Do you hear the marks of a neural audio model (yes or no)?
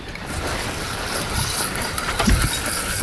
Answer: yes